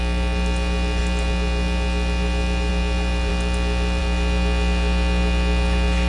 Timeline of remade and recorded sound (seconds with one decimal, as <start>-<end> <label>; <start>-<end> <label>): 0.0-6.1 recorded